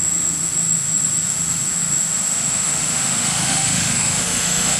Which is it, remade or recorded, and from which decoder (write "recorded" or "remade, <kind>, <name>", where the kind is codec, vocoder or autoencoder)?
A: remade, autoencoder, DAC-VAE